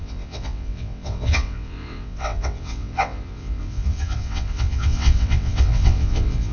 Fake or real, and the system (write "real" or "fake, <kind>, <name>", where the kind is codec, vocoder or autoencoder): fake, vocoder, WaveNeXt